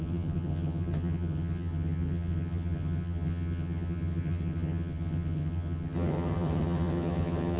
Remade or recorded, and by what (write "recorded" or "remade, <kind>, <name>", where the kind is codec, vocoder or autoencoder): remade, vocoder, HiFi-GAN